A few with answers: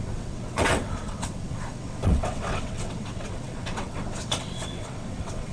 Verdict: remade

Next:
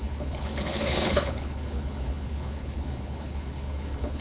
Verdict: remade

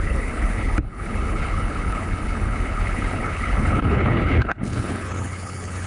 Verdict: remade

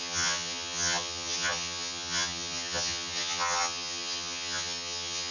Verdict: remade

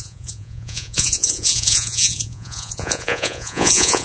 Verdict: remade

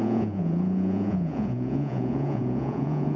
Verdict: remade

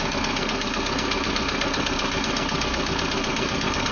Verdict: remade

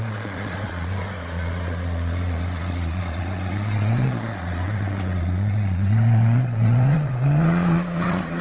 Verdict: remade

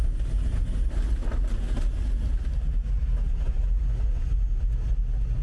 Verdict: recorded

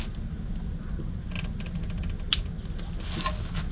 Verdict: recorded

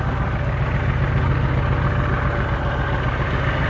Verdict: recorded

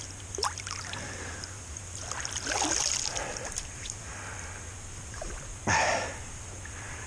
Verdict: recorded